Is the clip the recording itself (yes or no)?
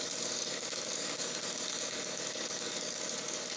no